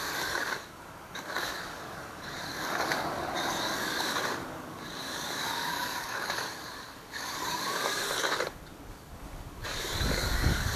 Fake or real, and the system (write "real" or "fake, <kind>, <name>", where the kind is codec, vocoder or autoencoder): fake, codec, DAC